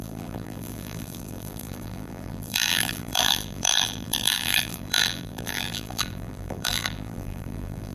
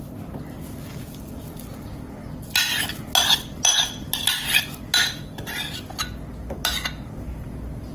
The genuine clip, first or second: second